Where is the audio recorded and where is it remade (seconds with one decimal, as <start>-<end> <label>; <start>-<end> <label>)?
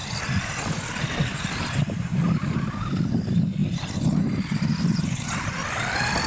0.0-6.3 recorded